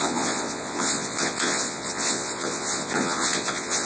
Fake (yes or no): yes